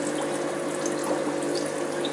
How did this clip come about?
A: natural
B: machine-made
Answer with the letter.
A